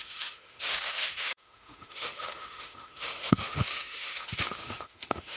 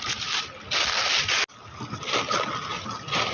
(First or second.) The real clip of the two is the second